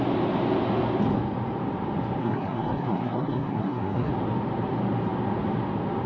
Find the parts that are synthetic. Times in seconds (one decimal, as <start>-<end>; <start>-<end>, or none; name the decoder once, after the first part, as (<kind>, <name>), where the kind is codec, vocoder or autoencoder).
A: 2.2-4.1 (codec, SNAC)